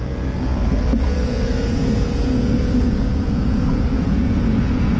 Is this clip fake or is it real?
fake